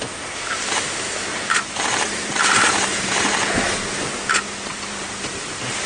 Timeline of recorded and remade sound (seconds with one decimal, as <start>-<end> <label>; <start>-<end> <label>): 0.0-1.3 recorded; 1.3-3.5 remade; 3.5-4.7 recorded; 4.7-5.4 remade; 5.4-5.9 recorded